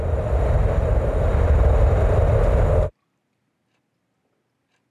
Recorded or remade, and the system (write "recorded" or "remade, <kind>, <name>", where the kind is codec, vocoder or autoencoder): recorded